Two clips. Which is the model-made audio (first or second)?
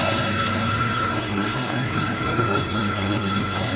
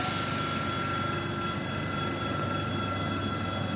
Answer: first